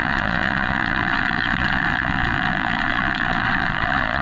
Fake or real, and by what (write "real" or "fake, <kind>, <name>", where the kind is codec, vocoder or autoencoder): fake, vocoder, Vocos